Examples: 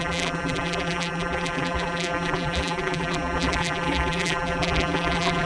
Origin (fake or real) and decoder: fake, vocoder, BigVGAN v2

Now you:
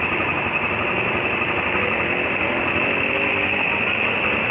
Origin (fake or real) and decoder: real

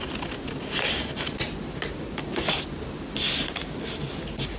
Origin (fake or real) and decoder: real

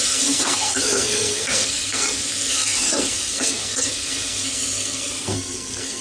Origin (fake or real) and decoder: fake, codec, SNAC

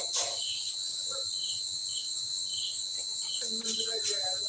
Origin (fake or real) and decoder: real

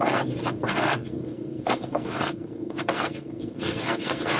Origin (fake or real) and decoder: fake, codec, SNAC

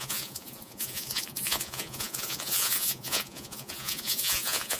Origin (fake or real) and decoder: fake, vocoder, Vocos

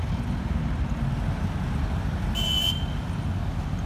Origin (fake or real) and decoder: real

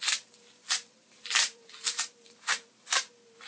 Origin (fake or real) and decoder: fake, vocoder, BigVGAN v2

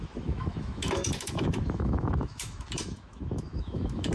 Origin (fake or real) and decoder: fake, autoencoder, DAC-VAE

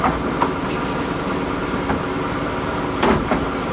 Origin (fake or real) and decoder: real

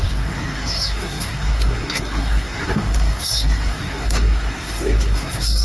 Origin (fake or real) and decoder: fake, codec, SNAC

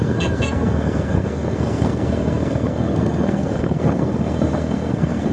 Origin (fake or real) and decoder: fake, codec, SNAC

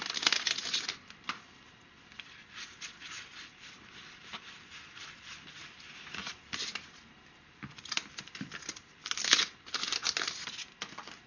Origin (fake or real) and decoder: real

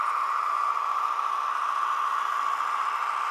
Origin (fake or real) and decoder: real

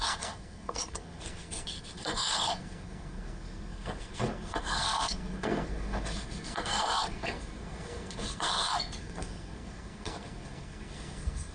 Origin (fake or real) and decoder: fake, codec, SNAC